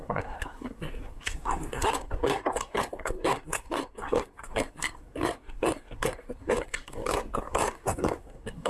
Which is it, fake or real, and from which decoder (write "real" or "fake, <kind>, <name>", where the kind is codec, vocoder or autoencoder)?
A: fake, codec, SNAC